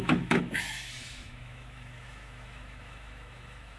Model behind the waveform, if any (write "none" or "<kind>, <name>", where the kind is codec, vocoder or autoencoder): autoencoder, DAC-VAE